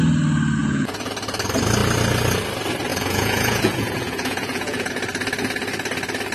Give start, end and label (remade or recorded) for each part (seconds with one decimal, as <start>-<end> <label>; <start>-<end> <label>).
0.0-0.6 recorded; 0.6-1.1 remade; 1.1-2.9 recorded; 2.9-4.9 remade; 4.9-6.3 recorded